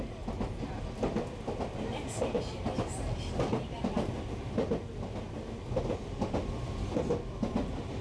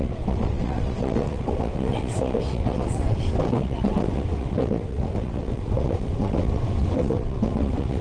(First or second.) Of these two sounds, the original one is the first